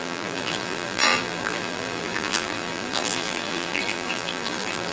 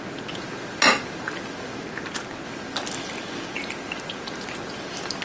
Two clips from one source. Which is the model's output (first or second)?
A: first